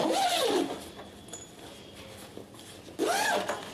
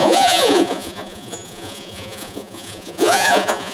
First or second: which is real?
first